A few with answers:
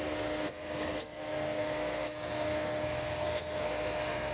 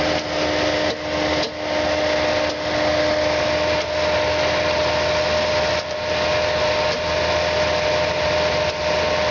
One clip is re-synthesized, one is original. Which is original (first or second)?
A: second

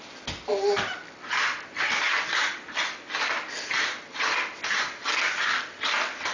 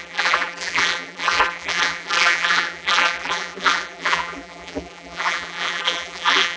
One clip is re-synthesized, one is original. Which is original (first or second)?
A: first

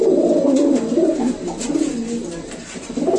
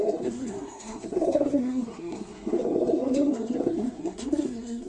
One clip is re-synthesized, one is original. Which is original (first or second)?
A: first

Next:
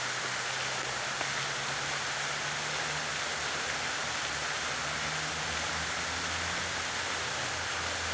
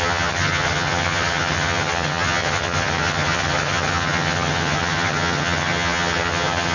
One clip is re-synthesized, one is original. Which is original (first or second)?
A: first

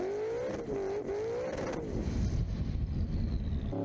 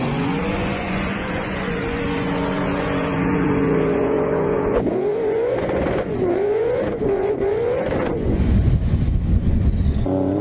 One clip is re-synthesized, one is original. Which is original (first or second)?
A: first